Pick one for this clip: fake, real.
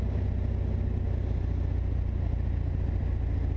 real